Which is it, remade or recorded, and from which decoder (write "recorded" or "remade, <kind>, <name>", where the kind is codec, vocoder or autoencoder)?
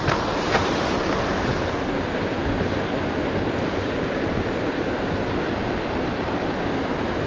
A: recorded